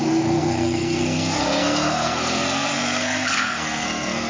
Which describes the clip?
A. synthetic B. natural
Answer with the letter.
A